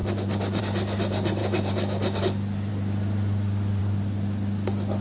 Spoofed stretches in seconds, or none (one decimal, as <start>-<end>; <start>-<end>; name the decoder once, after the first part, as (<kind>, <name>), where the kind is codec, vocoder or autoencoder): 1.4-2.2 (codec, DAC)